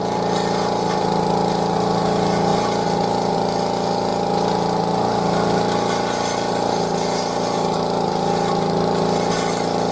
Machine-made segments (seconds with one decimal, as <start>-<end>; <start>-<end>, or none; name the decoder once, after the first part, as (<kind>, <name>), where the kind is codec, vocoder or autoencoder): none